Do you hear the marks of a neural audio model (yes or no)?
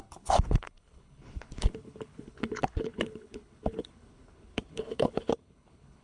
yes